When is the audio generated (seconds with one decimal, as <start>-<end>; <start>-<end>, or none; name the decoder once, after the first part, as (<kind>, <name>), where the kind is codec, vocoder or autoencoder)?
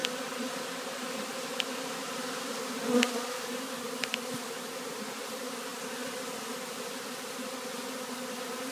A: 0.0-8.7 (vocoder, BigVGAN v2)